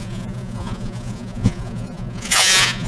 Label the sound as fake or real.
fake